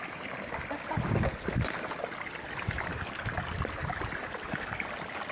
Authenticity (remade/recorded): recorded